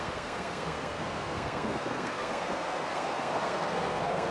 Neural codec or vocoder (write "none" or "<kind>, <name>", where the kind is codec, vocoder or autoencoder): codec, SNAC